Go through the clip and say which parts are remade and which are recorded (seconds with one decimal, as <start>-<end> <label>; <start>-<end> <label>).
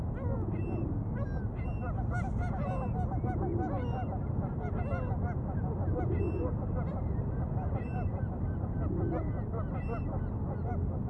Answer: 0.0-6.9 recorded; 6.9-8.9 remade; 8.9-11.1 recorded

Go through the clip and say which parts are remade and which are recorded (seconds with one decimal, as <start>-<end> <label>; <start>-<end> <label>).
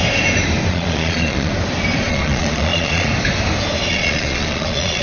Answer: 0.0-0.7 recorded; 0.7-1.5 remade; 1.5-2.1 recorded; 2.1-3.1 remade; 3.1-3.9 recorded; 3.9-5.0 remade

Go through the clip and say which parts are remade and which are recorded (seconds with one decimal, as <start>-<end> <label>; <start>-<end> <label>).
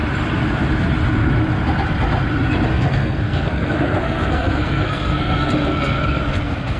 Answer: 0.0-2.7 recorded; 2.7-6.8 remade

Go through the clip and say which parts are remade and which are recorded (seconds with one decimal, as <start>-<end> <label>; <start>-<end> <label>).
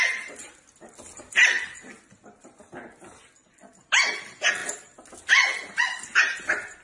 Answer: 0.0-6.8 recorded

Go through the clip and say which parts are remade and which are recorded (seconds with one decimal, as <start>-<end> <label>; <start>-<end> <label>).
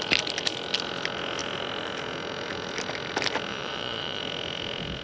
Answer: 0.0-3.5 recorded; 3.5-4.2 remade; 4.2-5.0 recorded